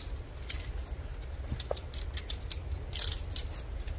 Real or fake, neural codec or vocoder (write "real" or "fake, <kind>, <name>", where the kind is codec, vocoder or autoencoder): real